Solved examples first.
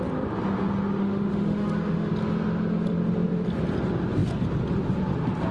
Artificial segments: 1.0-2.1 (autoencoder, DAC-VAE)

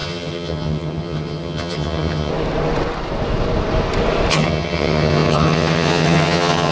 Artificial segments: 0.0-2.3 (vocoder, HiFi-GAN); 4.3-6.7

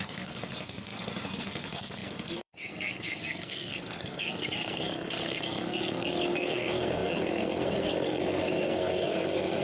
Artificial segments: 0.0-9.6 (codec, SNAC)

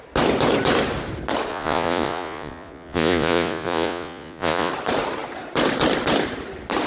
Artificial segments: 1.5-4.7 (vocoder, Vocos)

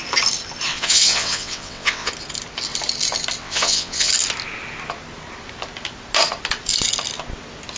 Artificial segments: 0.7-2.1 (vocoder, WaveNeXt); 3.4-4.1

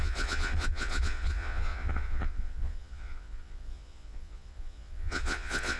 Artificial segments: 0.0-5.8 (vocoder, Vocos)

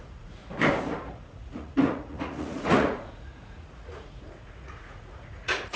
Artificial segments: 0.0-0.4 (vocoder, Vocos); 1.1-5.8